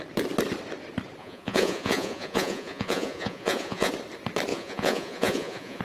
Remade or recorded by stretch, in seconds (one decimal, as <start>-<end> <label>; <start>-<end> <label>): 0.0-1.2 recorded; 1.2-3.9 remade; 3.9-4.5 recorded; 4.5-5.8 remade